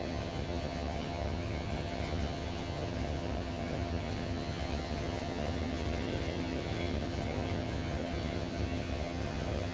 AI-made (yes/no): yes